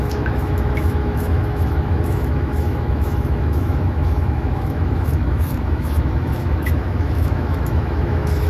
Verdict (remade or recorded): remade